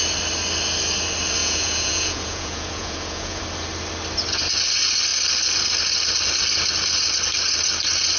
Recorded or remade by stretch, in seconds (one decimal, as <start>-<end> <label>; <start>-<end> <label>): 0.0-1.4 recorded; 1.4-3.4 remade; 3.4-8.2 recorded